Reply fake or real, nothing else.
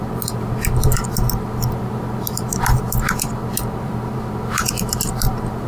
fake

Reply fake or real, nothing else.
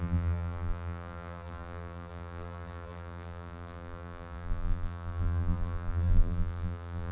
fake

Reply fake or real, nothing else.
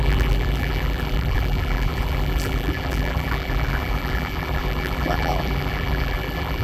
fake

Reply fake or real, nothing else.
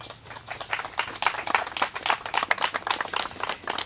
real